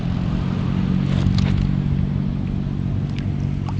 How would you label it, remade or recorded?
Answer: recorded